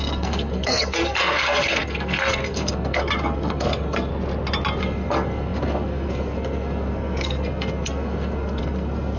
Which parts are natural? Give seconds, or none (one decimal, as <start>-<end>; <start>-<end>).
4.1-4.8